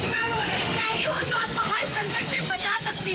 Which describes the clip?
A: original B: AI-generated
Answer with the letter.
B